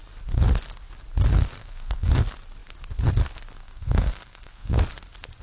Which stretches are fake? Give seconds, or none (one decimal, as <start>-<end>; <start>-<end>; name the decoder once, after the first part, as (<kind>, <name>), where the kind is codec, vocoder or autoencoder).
1.6-2.1 (codec, SNAC); 3.6-4.8